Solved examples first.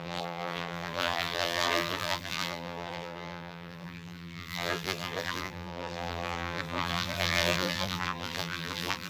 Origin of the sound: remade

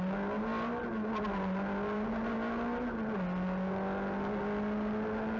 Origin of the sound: recorded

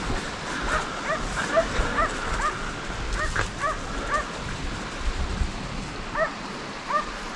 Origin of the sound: recorded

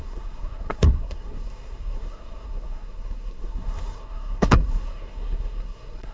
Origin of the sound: remade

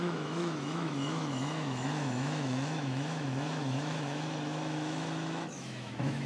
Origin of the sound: remade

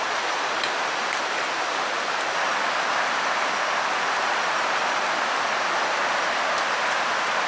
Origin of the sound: recorded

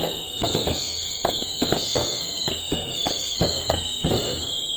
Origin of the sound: remade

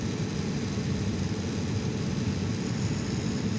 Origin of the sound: recorded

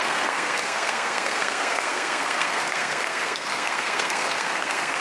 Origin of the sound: remade